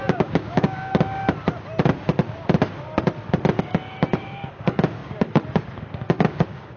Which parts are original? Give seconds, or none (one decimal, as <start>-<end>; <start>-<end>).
1.2-3.6